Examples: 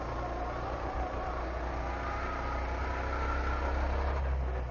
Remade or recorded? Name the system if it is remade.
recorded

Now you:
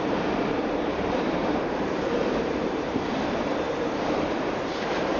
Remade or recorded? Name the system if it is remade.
remade, vocoder, BigVGAN v2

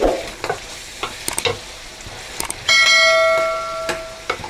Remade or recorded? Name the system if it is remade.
recorded